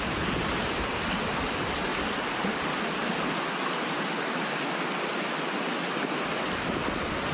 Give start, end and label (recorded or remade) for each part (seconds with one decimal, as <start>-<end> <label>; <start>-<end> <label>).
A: 0.0-7.3 recorded